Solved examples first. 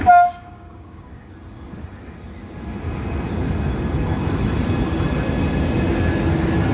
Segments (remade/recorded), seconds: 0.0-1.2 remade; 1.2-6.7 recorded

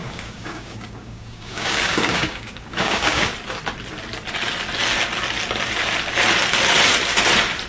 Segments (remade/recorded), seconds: 0.0-3.3 remade; 3.3-7.7 recorded

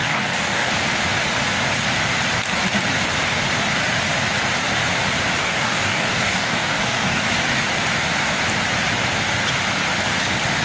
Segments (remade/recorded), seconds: 0.0-0.7 remade; 0.7-5.4 recorded; 5.4-7.2 remade; 7.2-10.6 recorded

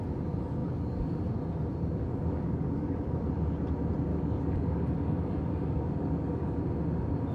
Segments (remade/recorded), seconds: 0.0-0.6 recorded; 0.6-1.2 remade; 1.2-2.0 recorded; 2.0-3.3 remade; 3.3-4.1 recorded; 4.1-6.6 remade; 6.6-7.3 recorded